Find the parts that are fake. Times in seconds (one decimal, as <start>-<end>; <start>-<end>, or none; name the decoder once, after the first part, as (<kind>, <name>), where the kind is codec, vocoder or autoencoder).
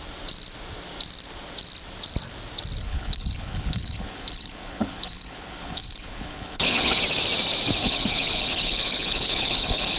2.8-7.0 (codec, HILCodec); 7.8-10.0